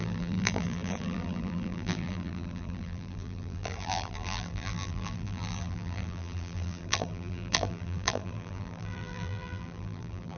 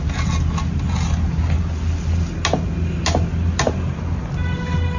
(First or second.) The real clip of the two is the second